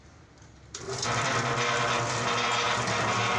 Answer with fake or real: real